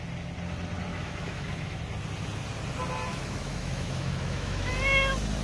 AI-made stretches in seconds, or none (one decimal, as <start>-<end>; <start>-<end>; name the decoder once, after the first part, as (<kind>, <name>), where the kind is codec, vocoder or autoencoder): 0.9-1.8 (autoencoder, DAC-VAE); 3.1-4.7